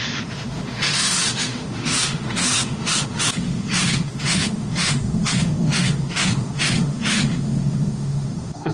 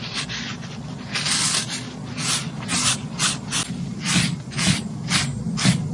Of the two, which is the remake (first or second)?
first